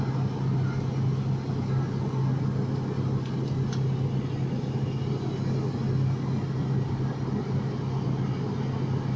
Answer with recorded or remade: recorded